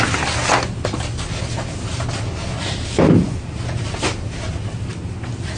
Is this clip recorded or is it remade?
recorded